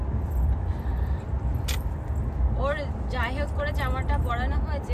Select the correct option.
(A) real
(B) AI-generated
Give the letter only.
A